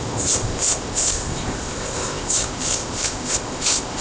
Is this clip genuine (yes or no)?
no